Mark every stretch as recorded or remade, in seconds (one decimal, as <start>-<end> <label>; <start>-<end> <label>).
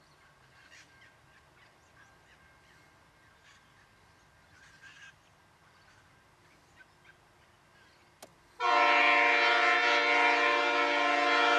0.0-11.6 recorded